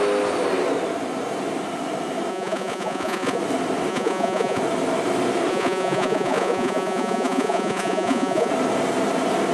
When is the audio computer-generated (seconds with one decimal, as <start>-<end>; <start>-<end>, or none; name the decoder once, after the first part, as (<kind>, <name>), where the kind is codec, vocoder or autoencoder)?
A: 2.3-3.4 (vocoder, Vocos); 3.9-4.6; 5.5-8.5